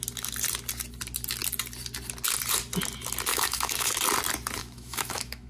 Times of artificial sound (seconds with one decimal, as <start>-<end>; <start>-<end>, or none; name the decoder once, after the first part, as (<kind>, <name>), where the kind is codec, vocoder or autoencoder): 3.3-3.9 (autoencoder, DAC-VAE); 4.6-5.5